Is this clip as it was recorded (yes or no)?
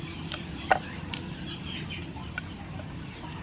yes